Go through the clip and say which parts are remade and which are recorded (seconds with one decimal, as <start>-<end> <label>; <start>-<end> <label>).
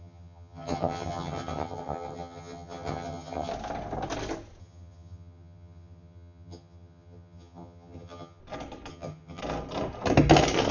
0.0-3.5 remade; 3.5-4.6 recorded; 4.6-8.4 remade; 8.4-8.9 recorded; 8.9-9.4 remade; 9.4-10.7 recorded